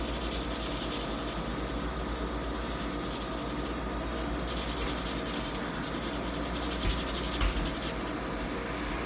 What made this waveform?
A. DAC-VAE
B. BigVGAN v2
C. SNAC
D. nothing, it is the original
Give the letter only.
D